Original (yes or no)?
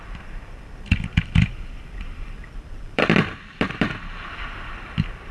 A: no